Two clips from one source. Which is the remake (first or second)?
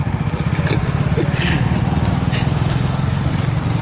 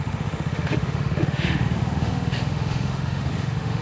second